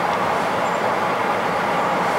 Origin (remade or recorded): recorded